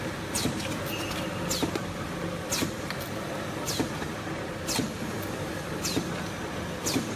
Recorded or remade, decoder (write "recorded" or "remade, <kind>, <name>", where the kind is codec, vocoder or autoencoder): recorded